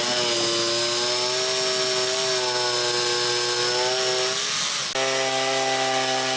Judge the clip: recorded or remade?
recorded